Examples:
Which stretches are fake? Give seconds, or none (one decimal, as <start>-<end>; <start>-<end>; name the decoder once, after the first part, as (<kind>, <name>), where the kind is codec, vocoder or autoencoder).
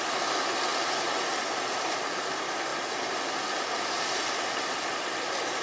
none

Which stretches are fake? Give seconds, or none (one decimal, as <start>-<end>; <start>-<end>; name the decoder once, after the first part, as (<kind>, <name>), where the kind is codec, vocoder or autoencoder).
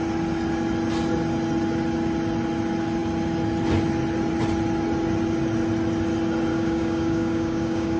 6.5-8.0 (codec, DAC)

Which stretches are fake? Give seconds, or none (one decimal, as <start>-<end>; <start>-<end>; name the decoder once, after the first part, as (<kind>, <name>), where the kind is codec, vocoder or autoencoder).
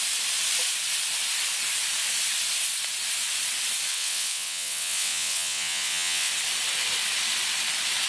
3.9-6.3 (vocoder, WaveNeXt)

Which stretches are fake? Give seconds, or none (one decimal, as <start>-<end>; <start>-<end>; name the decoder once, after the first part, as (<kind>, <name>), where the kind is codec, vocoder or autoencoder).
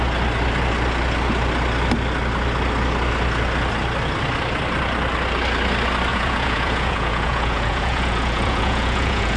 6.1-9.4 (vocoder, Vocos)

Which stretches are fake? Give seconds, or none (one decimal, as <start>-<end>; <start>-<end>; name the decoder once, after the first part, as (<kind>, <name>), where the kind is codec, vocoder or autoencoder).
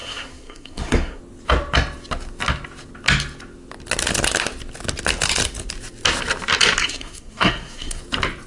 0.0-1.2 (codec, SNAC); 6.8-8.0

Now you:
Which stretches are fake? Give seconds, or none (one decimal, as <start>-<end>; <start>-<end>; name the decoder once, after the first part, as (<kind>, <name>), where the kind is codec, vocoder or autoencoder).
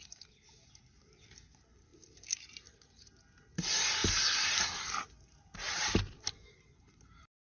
none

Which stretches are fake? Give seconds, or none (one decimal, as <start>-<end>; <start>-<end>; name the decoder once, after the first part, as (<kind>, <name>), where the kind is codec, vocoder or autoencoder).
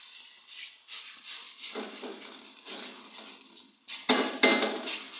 none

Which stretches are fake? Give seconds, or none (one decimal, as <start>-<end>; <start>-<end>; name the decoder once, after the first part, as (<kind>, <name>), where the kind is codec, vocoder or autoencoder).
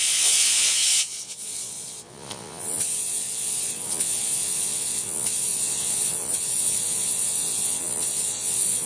0.0-8.9 (vocoder, Vocos)